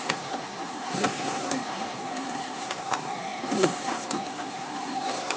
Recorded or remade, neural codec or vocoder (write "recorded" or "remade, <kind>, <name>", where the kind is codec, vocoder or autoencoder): remade, codec, SNAC